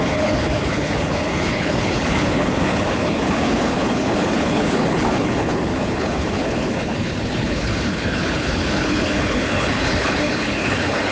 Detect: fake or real fake